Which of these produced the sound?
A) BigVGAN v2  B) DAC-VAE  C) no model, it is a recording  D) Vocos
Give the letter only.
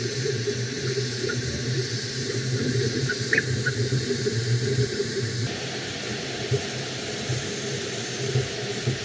A